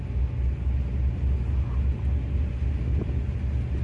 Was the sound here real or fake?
real